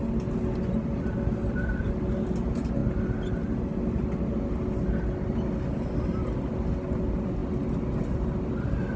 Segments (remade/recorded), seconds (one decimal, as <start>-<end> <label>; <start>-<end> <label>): 0.0-9.0 recorded